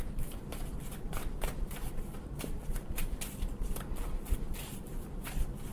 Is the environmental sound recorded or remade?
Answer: remade